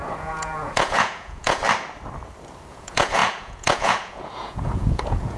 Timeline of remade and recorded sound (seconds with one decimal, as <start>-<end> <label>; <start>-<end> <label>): 0.0-1.6 remade; 1.6-2.7 recorded; 2.7-5.4 remade